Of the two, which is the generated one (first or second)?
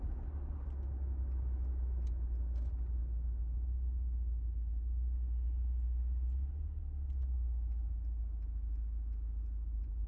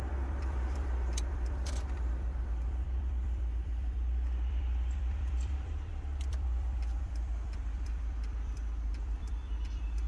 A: second